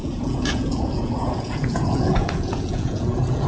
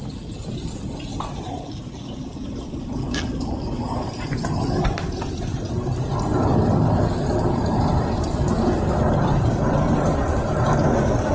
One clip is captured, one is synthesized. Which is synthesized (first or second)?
first